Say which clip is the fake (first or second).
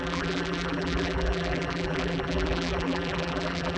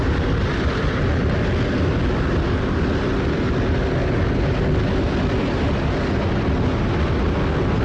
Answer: first